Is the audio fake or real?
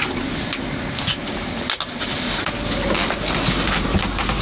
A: real